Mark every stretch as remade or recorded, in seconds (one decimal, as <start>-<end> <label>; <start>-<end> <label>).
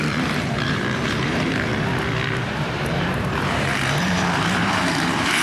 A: 0.0-1.7 remade; 1.7-2.4 recorded; 2.4-5.4 remade